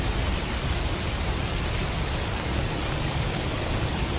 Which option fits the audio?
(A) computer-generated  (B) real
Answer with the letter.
B